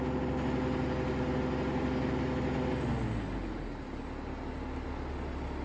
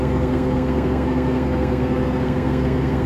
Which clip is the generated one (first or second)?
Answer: second